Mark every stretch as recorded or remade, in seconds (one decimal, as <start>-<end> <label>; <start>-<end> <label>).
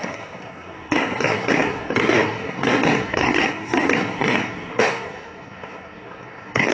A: 0.0-6.7 remade